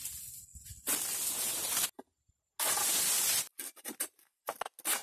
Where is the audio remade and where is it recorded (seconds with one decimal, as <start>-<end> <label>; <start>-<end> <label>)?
0.0-5.0 recorded